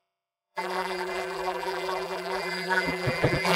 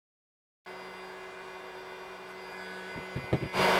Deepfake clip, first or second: first